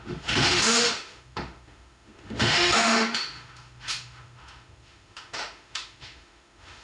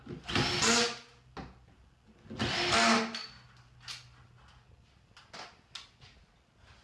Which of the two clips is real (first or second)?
second